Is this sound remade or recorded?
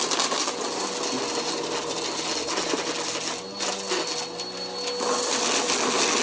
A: recorded